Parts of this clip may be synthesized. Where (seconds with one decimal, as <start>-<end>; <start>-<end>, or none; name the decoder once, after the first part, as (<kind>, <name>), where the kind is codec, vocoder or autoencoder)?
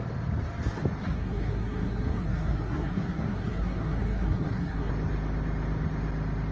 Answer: 1.0-4.9 (codec, SNAC)